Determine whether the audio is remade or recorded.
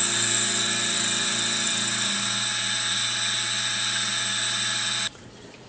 recorded